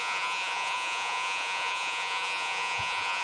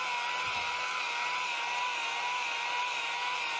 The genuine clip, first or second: second